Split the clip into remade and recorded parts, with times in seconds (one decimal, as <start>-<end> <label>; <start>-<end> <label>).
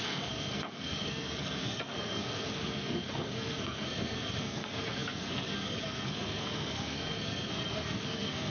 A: 0.0-8.5 remade